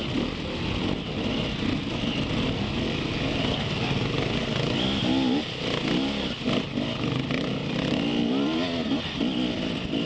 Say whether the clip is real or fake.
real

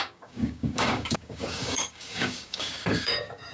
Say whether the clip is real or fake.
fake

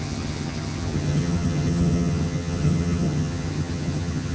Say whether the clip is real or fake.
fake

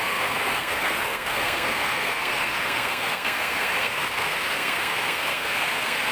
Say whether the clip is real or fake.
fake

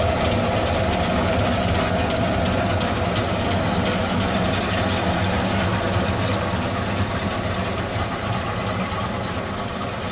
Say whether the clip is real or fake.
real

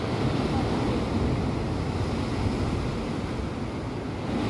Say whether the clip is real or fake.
real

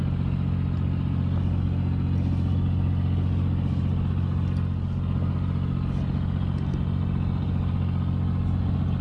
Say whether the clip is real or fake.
real